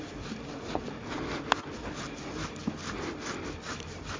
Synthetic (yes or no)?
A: yes